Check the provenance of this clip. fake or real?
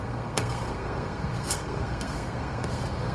fake